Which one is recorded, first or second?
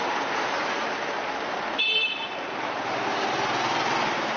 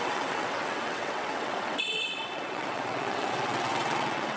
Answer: first